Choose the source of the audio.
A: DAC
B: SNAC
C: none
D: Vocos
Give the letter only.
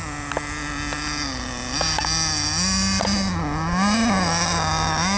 C